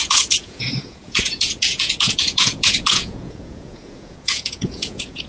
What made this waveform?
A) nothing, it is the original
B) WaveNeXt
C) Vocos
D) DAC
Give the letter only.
C